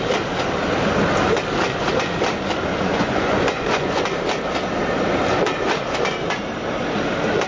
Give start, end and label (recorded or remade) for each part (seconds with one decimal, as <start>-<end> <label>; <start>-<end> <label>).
0.0-2.7 recorded; 2.7-4.0 remade; 4.0-7.5 recorded